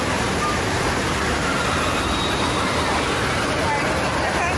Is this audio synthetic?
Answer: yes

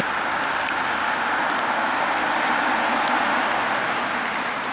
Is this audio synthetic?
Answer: no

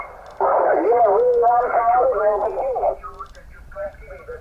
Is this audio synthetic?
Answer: yes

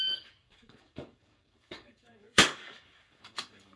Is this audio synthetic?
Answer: yes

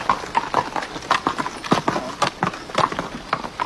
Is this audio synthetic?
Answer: no